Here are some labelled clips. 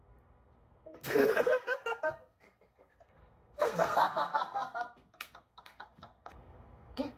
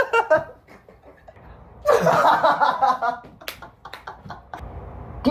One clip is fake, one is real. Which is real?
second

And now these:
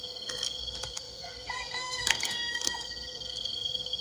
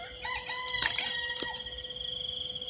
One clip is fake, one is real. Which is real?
second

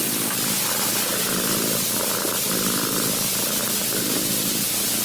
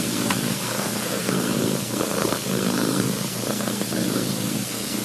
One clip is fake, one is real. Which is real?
first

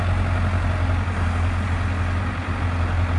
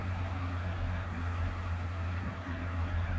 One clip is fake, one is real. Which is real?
first